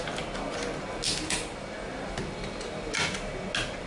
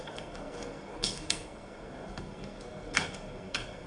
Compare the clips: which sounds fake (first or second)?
second